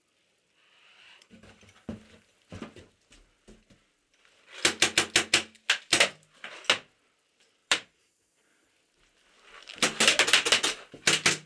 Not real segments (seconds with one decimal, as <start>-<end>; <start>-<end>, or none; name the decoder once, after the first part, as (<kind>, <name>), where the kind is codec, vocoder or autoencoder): 7.6-8.8 (vocoder, BigVGAN v2)